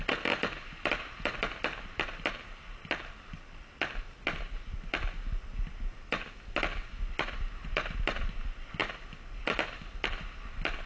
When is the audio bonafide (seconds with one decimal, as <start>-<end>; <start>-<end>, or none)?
0.0-10.9